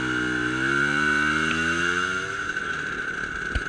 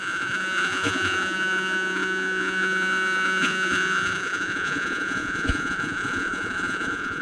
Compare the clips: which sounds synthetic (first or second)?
second